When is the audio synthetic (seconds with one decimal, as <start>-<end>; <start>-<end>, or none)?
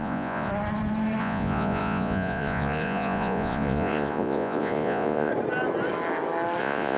0.0-0.5; 1.2-5.3; 6.6-7.0